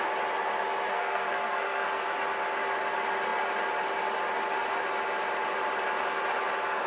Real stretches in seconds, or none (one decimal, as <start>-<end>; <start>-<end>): 0.0-0.9; 2.1-6.9